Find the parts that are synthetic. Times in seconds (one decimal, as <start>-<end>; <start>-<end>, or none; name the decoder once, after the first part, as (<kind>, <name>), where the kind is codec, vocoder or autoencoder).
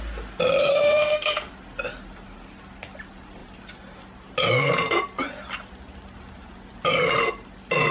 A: 0.6-1.5 (autoencoder, DAC-VAE)